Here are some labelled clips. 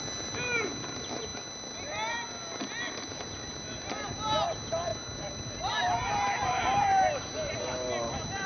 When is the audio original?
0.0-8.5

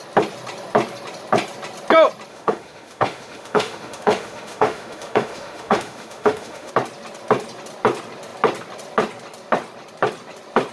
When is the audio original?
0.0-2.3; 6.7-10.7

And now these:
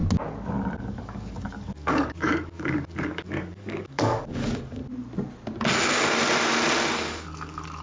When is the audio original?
0.0-0.8; 4.8-6.9

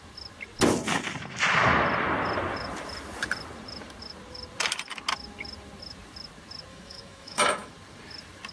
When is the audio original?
0.0-6.7; 7.7-8.5